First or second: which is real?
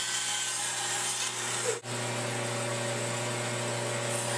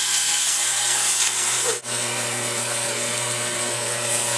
first